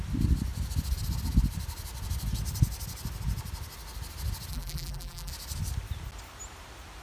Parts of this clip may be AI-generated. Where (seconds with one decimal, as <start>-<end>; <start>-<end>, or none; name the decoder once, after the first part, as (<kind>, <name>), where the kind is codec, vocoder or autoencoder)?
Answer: 4.5-5.3 (vocoder, BigVGAN v2)